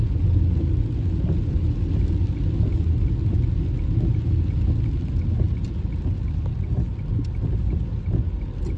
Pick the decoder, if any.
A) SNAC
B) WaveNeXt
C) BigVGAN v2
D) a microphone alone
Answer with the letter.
D